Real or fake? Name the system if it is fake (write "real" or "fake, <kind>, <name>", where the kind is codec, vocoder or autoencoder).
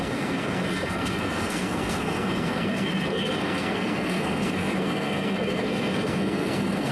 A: fake, codec, SNAC